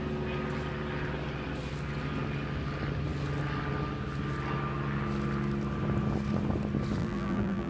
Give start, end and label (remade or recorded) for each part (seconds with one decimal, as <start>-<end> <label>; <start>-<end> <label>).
0.0-7.0 recorded; 7.0-7.7 remade